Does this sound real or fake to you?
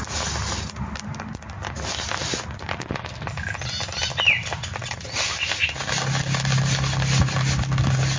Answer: real